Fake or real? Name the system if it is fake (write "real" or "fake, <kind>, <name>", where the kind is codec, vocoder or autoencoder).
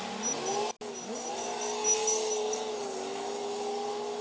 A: real